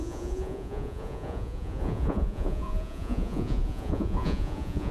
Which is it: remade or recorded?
remade